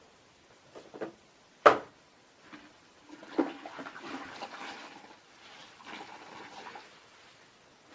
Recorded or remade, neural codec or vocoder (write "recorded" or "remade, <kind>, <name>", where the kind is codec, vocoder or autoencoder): recorded